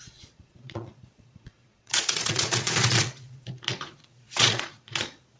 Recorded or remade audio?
remade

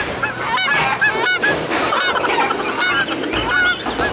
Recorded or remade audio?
recorded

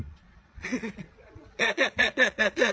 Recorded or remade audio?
remade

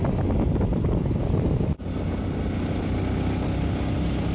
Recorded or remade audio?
recorded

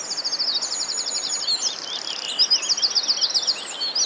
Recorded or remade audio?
recorded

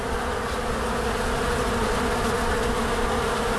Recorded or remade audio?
recorded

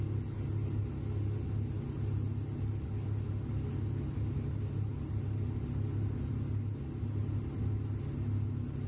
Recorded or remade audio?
recorded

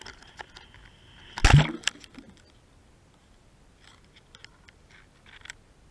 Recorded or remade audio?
recorded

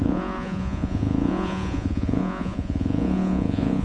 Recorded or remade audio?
remade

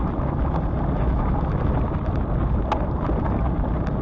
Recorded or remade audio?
recorded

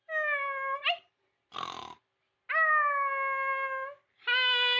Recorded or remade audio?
recorded